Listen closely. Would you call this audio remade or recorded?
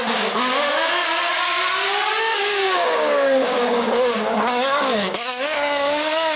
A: remade